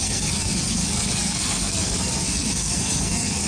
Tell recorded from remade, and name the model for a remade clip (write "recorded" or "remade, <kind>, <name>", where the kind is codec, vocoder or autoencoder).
remade, codec, SNAC